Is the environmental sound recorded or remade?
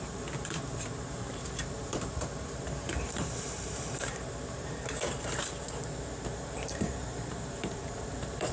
remade